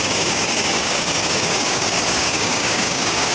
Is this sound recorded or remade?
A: remade